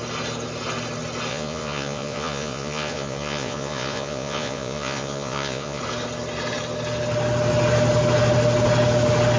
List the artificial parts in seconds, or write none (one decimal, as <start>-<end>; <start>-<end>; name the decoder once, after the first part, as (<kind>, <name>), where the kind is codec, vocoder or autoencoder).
1.3-5.8 (vocoder, Vocos)